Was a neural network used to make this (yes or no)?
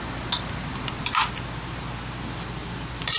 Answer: no